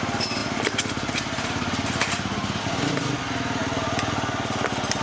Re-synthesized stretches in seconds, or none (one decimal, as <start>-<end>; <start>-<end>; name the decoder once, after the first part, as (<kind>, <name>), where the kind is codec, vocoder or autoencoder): 0.4-2.7 (vocoder, BigVGAN v2)